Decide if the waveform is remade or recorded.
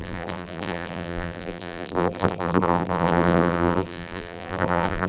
remade